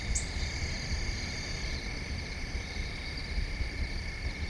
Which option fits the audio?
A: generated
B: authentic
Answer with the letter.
B